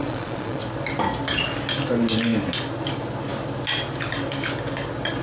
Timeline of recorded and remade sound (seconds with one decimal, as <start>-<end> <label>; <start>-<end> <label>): 0.0-0.6 remade; 0.6-5.2 recorded